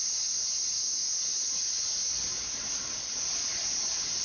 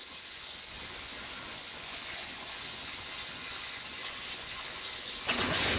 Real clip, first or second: first